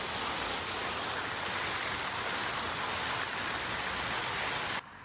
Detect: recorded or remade recorded